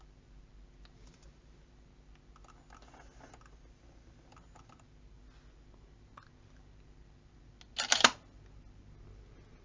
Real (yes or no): yes